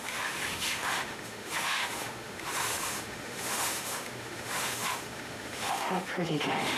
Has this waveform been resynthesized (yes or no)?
yes